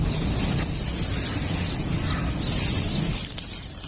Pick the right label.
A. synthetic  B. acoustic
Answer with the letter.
B